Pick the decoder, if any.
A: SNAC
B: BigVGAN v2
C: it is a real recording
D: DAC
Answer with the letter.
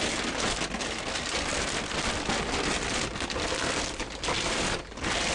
C